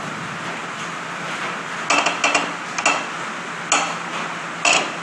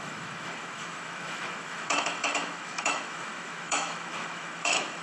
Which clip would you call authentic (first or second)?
first